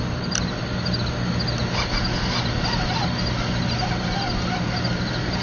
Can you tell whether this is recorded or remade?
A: recorded